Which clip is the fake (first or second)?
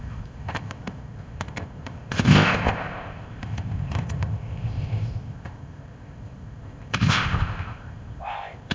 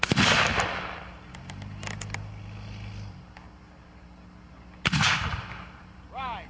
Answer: first